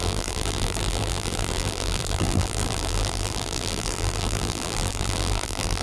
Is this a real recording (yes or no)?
no